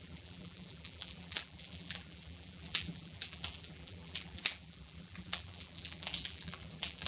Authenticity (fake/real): fake